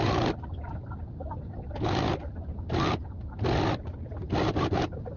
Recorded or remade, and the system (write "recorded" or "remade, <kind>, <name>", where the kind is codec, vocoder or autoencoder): recorded